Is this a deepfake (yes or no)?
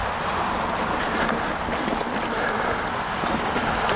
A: no